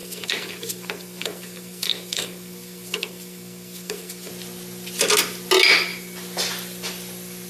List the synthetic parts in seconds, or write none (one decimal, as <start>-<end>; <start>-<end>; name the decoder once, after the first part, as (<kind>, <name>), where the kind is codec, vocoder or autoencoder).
0.0-4.3 (codec, SNAC)